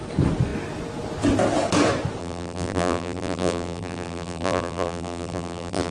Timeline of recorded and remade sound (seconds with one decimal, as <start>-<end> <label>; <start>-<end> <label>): 0.0-2.2 recorded; 2.2-5.9 remade